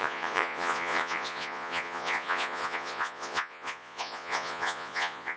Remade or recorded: remade